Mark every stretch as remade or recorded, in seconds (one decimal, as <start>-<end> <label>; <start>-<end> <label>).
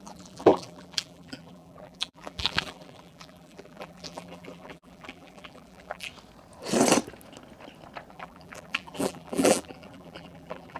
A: 0.0-6.1 remade; 6.1-8.1 recorded; 8.1-10.8 remade